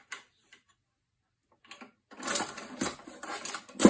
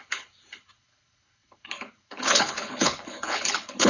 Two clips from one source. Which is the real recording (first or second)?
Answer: first